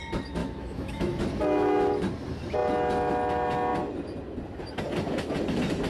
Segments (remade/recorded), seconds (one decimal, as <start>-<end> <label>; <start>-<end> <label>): 0.0-0.4 recorded; 0.4-1.2 remade; 1.2-5.9 recorded